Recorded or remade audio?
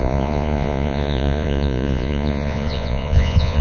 remade